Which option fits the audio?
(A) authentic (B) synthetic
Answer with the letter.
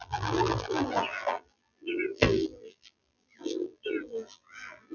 B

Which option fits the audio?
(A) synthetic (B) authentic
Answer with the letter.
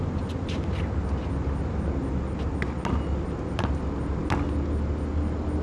B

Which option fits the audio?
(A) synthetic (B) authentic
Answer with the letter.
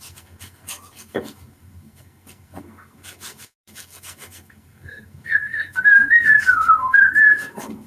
A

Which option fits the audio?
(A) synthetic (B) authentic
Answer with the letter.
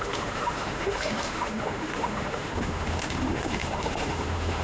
A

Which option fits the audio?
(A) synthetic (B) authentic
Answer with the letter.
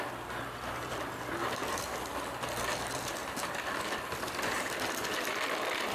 A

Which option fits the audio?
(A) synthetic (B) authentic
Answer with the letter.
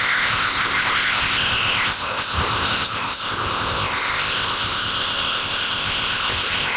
A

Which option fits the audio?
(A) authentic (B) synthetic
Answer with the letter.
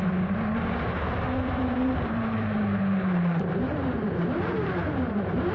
B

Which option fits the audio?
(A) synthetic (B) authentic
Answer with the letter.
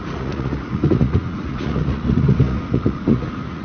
A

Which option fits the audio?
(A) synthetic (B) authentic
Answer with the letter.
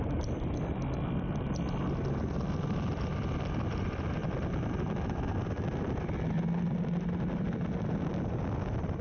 B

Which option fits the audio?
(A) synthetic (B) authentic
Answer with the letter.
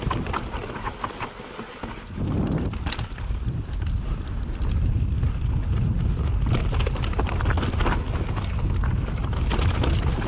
B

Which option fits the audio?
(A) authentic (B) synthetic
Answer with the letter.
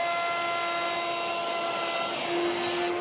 A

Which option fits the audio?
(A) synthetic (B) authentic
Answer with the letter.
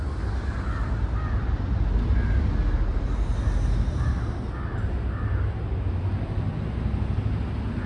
B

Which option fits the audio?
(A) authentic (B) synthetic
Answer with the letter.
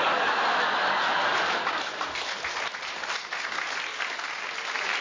A